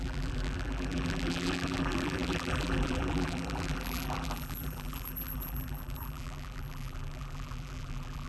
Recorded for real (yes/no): no